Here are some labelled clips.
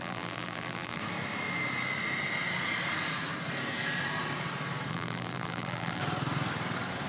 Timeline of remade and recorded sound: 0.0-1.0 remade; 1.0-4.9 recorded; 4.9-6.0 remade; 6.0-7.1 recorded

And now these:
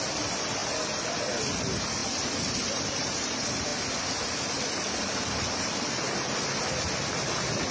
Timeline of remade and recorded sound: 0.0-0.6 remade; 0.6-1.4 recorded; 1.4-7.7 remade

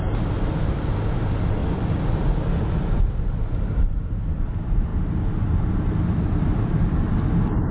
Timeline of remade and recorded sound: 0.0-4.9 remade; 4.9-5.7 recorded; 5.7-7.7 remade

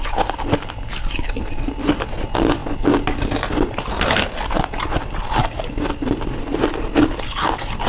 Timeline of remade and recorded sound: 0.0-7.9 recorded

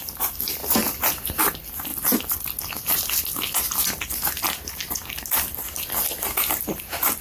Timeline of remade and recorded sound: 0.0-0.6 remade; 0.6-1.4 recorded; 1.4-1.9 remade; 1.9-6.2 recorded; 6.2-7.2 remade